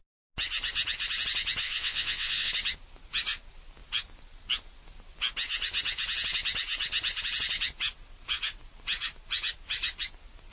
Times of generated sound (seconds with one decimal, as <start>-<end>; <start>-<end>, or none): 1.6-2.5